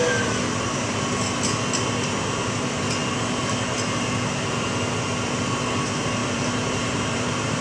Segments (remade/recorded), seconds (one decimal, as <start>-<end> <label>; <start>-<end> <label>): 0.0-6.2 recorded; 6.2-7.6 remade